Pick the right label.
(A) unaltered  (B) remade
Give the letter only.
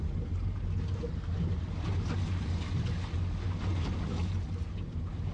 A